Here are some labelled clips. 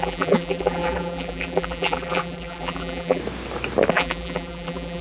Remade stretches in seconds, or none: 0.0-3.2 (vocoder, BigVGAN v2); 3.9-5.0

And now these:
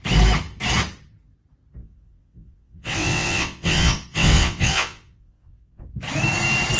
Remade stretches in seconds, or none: 1.8-5.9 (vocoder, WaveNeXt)